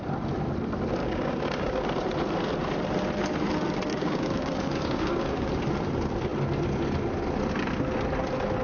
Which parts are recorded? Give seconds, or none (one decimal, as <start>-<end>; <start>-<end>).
0.0-1.0; 1.8-3.9; 5.5-8.6